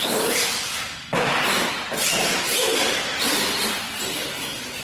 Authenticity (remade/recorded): recorded